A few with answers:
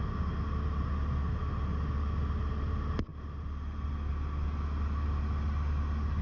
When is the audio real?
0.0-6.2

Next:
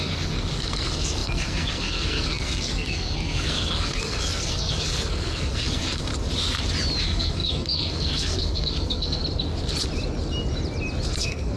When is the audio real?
6.1-7.0; 9.2-11.2

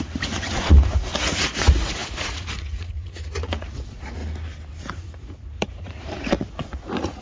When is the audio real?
4.2-5.0

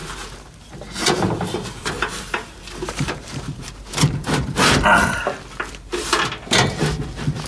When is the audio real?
3.9-7.5